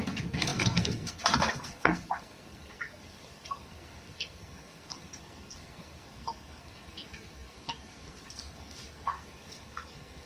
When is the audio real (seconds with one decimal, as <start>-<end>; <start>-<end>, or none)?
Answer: none